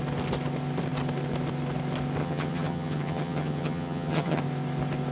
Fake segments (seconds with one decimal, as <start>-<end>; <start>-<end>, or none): 2.2-4.4